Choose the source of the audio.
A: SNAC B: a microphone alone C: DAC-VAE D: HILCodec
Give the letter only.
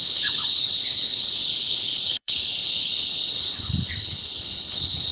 D